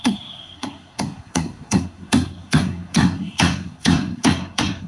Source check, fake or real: fake